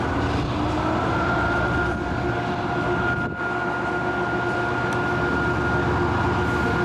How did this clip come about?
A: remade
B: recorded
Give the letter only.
B